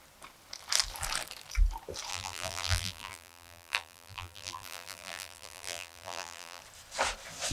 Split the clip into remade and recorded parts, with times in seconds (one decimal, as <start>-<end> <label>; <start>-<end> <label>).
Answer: 0.0-2.1 recorded; 2.1-6.6 remade; 6.6-7.5 recorded